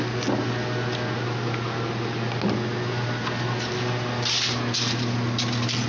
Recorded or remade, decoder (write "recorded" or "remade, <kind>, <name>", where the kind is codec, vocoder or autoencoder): recorded